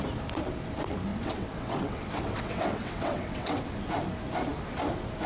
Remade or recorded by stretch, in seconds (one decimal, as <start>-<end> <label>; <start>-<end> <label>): 0.0-1.1 recorded; 1.1-3.6 remade; 3.6-5.3 recorded